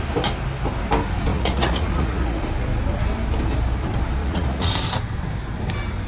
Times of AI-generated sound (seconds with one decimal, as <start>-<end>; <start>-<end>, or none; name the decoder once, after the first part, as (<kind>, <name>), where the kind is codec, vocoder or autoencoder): 1.3-2.4 (vocoder, Vocos); 4.2-4.7